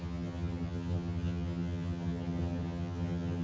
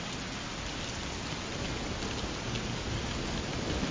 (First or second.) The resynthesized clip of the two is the first